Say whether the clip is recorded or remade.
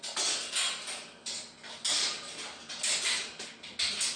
recorded